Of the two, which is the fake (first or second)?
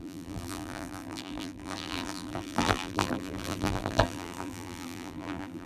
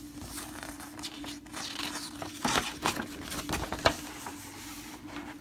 first